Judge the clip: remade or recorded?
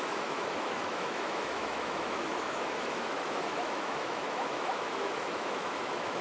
remade